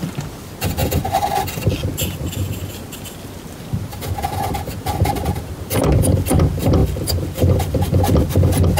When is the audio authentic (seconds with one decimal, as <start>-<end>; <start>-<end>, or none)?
0.0-3.9; 5.8-8.8